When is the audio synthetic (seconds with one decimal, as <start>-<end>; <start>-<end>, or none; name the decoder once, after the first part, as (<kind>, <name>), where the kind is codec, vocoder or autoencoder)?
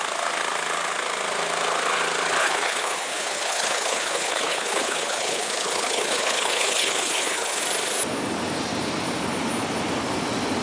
2.4-7.6 (codec, HILCodec)